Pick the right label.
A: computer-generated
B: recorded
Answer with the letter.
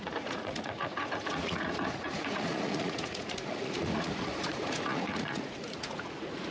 A